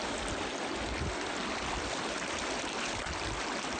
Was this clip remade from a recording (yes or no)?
no